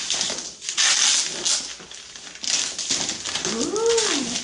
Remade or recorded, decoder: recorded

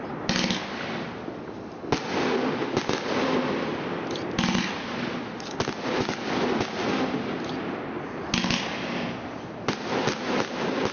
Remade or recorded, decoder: recorded